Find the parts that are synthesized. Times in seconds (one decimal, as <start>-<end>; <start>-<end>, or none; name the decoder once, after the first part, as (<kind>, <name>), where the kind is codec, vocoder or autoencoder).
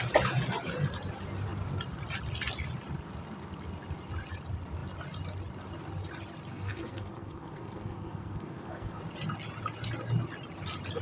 6.5-9.0 (codec, SNAC)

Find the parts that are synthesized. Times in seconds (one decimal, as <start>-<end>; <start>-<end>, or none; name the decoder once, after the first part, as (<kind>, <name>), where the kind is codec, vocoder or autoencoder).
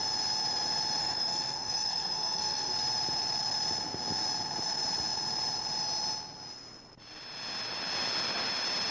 1.0-2.7 (codec, SNAC)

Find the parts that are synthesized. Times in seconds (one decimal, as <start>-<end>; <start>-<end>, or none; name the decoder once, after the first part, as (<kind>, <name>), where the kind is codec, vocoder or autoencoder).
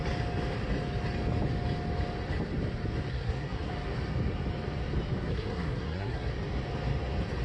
3.1-3.7 (codec, SNAC); 5.3-6.3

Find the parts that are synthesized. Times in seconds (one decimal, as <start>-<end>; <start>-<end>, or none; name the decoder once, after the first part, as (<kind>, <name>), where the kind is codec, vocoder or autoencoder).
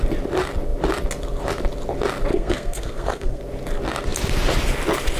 2.3-3.4 (codec, SNAC)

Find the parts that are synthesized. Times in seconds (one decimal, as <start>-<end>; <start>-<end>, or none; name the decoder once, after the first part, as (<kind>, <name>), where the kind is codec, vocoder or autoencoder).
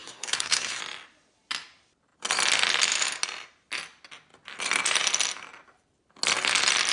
0.0-0.8 (codec, SNAC)